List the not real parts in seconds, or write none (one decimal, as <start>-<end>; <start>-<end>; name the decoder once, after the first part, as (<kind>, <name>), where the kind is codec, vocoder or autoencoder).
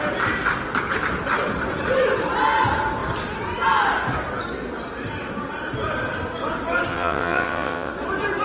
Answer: 6.9-7.9 (vocoder, WaveNeXt)